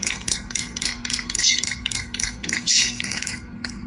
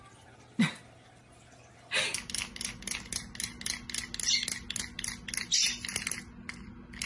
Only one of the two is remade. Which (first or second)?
first